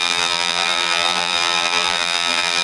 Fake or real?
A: fake